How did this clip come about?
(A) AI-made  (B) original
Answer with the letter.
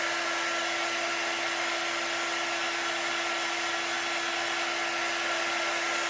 B